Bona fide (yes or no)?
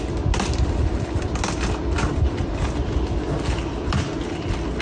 yes